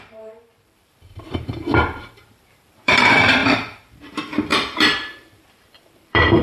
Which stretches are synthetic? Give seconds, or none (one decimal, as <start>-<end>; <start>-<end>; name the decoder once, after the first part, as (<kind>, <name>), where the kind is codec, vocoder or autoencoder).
0.0-6.4 (vocoder, BigVGAN v2)